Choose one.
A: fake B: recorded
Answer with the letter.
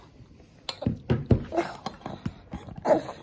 B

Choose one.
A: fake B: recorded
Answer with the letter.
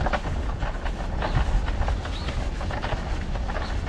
B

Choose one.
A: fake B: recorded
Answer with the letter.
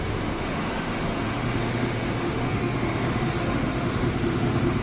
A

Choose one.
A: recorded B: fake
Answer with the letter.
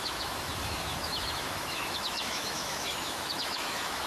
B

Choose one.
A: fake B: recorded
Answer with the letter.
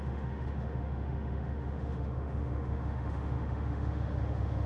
A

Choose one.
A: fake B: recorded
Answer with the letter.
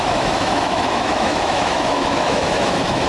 A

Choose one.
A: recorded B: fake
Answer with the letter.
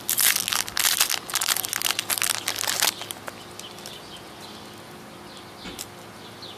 A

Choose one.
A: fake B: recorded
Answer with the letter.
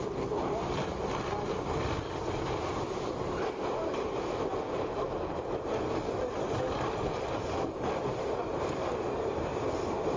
B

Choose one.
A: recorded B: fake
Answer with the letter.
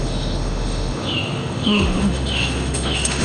B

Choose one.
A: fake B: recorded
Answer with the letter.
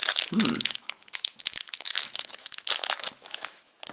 A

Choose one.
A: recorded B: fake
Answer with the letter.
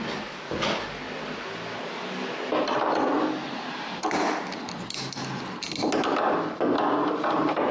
A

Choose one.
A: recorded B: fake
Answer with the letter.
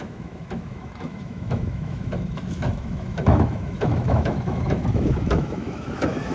B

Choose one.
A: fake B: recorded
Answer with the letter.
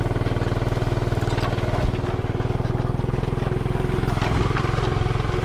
B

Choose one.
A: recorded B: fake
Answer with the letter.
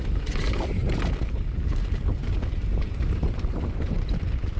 A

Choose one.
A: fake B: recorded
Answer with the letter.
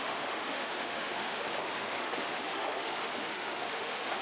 A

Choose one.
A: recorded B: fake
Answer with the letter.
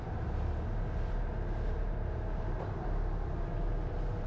A